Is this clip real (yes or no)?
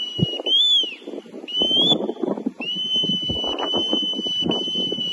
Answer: yes